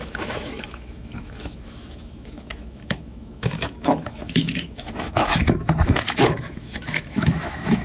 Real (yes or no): no